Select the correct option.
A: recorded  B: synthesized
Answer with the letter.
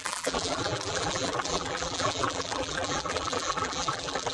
B